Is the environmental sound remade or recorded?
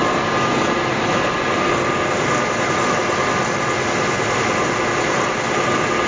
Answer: recorded